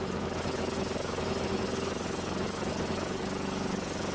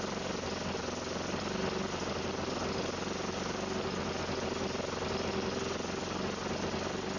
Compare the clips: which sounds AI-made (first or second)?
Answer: first